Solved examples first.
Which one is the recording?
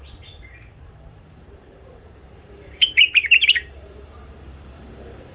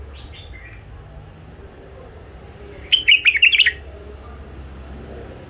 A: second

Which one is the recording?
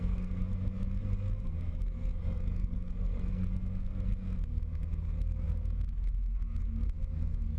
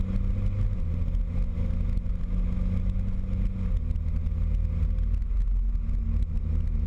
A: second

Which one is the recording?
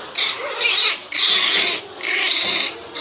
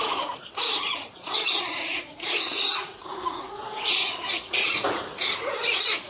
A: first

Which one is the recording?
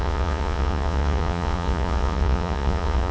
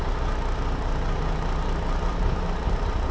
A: second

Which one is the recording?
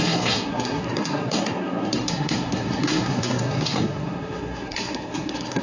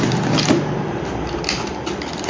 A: second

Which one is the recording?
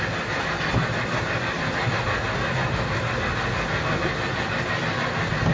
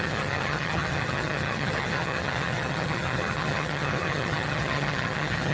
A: first